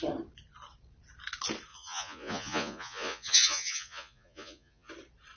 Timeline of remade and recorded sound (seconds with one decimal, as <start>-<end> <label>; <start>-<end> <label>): 0.0-1.7 recorded; 1.7-4.9 remade; 4.9-5.4 recorded